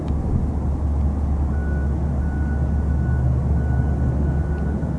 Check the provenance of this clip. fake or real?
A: real